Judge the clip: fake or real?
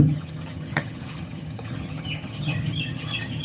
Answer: fake